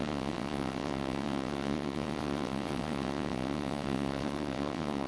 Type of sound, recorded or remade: remade